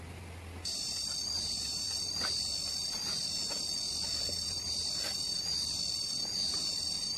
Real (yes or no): yes